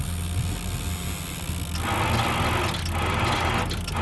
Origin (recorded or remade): recorded